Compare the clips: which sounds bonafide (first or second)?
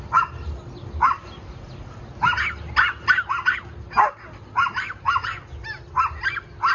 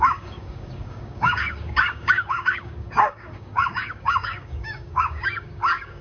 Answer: first